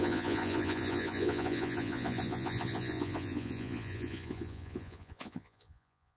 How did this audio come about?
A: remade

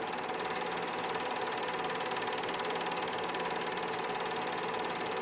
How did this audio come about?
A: recorded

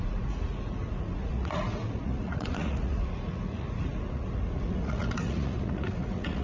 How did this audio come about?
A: remade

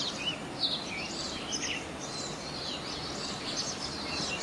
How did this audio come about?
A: recorded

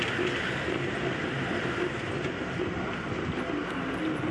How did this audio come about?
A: recorded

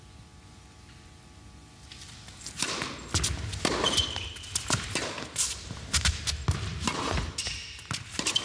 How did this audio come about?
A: recorded